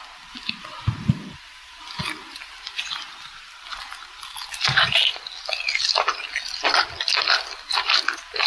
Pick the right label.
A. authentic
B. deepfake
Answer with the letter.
A